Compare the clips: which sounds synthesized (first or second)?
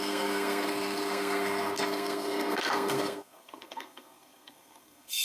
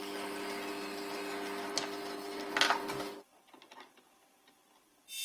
first